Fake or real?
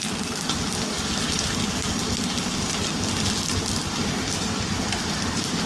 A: real